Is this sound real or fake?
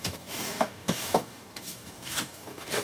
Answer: fake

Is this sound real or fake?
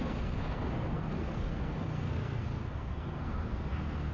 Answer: fake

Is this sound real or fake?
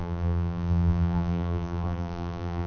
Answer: fake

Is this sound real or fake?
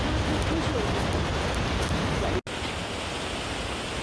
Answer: real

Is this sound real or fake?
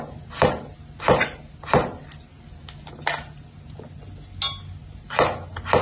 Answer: real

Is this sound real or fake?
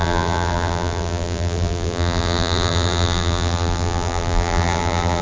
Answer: fake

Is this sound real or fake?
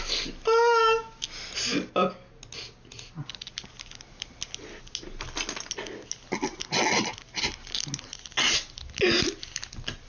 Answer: real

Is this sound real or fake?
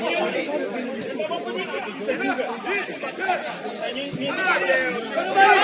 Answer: real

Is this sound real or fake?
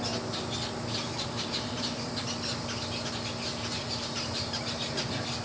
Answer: real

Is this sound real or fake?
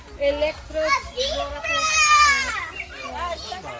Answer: real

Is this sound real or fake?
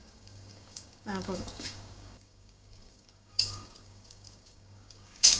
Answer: fake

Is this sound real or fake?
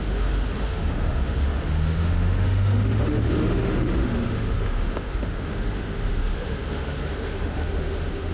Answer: fake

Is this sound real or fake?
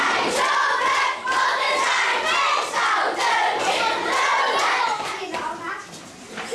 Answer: real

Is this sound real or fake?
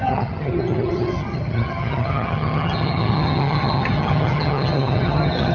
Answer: fake